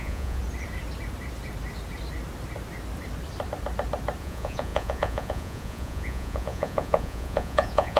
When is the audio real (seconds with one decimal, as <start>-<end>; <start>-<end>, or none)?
0.4-4.2